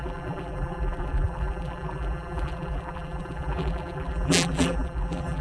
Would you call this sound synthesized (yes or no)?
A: yes